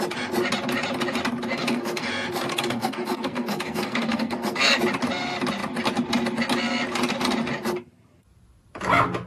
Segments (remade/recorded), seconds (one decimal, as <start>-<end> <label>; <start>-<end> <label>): 0.0-1.5 recorded; 1.5-2.1 remade; 2.1-2.5 recorded; 2.5-4.8 remade; 4.8-9.3 recorded